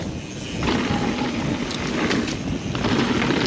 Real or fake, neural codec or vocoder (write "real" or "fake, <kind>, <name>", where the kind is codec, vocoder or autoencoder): real